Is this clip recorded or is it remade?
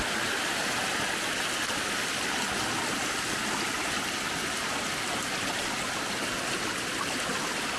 recorded